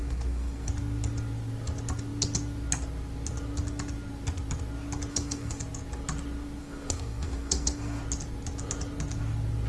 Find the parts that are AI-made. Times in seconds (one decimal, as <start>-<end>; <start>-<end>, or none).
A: 0.0-0.7; 5.1-5.6; 6.6-8.0